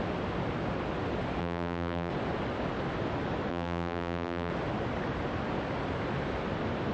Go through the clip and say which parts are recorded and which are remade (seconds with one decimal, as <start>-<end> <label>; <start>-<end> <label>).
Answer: 0.0-1.4 recorded; 1.4-2.1 remade; 2.1-3.5 recorded; 3.5-4.5 remade; 4.5-6.9 recorded